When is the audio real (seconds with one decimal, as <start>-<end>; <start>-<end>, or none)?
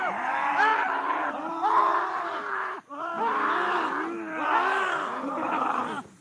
0.7-1.3; 1.9-2.5; 3.1-5.2